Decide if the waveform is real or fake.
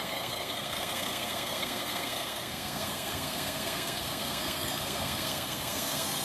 fake